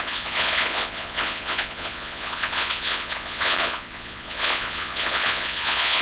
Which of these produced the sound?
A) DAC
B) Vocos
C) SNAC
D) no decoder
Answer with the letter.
B